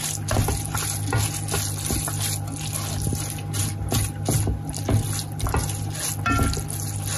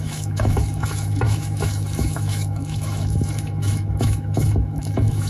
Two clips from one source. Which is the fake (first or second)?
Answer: second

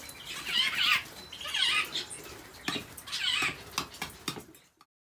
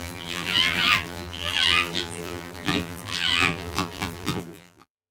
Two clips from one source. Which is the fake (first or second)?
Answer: second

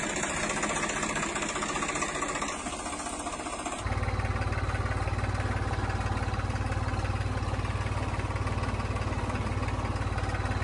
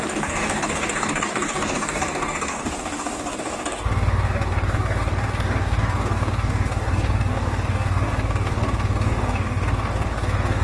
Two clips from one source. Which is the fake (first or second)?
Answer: second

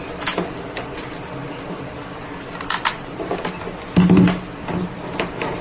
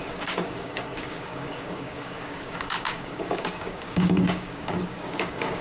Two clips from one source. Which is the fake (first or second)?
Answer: second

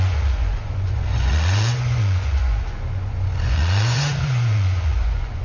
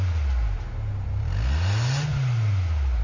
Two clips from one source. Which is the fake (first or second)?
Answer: first